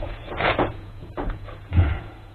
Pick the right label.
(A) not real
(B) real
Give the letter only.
A